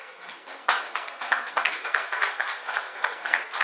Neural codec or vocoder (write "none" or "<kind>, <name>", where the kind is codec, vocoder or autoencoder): codec, SNAC